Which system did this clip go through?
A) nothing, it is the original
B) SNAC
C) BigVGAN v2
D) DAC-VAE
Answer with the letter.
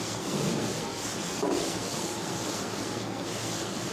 B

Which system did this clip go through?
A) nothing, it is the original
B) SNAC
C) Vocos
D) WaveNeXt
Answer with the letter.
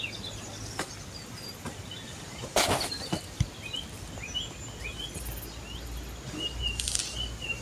A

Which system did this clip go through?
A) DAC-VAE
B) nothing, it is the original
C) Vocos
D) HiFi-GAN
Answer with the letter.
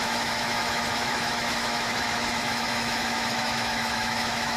A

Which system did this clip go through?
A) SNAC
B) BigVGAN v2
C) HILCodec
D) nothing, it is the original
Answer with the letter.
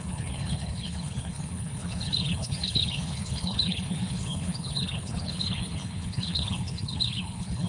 C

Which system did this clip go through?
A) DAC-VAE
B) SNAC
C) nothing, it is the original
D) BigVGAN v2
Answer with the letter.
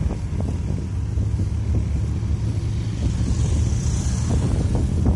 C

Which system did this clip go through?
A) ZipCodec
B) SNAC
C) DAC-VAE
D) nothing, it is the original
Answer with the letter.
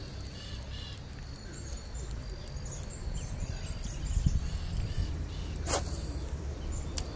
D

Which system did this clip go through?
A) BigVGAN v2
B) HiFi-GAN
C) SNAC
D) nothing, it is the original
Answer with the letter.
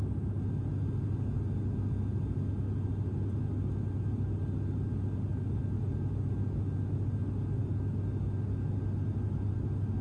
D